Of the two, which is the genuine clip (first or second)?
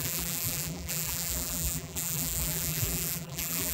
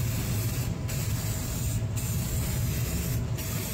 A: second